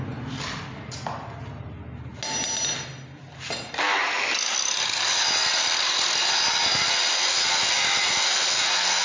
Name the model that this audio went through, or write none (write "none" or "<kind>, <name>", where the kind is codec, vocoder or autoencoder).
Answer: none